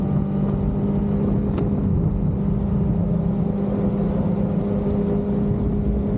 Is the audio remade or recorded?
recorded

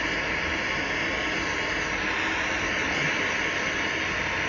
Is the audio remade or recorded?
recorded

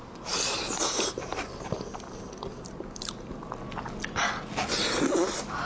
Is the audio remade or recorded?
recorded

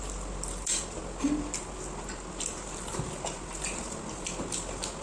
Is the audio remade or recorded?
recorded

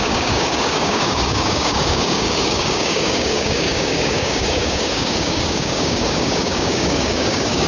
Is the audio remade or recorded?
remade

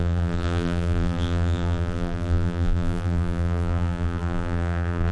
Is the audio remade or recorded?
remade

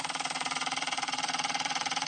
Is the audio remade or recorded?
remade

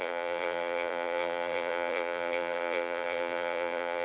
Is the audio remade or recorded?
remade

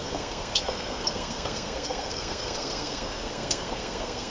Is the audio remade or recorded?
remade